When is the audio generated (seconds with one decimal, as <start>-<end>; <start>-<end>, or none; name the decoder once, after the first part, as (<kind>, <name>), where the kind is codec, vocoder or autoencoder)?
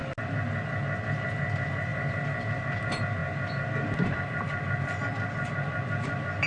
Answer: none